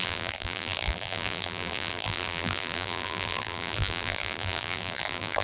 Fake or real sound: fake